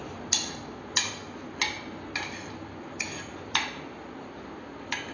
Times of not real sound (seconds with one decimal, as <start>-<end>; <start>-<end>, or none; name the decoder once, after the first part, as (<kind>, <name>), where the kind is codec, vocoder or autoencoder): none